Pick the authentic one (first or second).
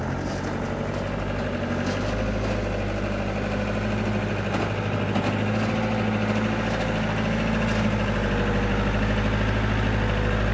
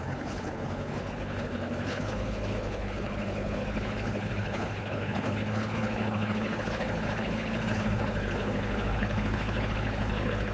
first